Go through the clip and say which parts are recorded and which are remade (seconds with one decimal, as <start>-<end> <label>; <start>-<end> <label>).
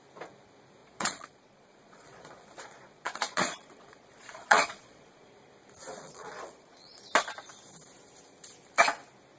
0.0-0.8 recorded; 0.8-5.3 remade; 5.3-5.9 recorded; 5.9-7.0 remade; 7.0-9.4 recorded